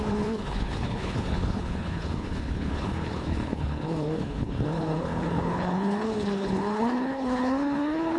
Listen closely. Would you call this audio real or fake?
fake